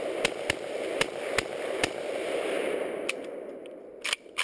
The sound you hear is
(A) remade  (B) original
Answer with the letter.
B